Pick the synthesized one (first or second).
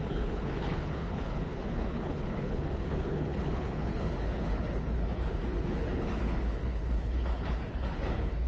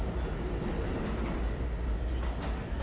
first